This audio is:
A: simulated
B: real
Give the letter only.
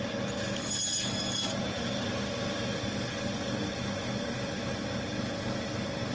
B